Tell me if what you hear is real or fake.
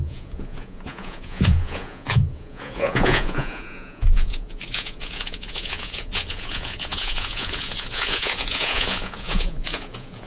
fake